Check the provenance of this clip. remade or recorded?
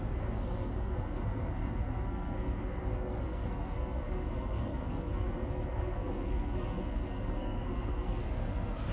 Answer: remade